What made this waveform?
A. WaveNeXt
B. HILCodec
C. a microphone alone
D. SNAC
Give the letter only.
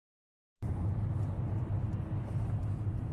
C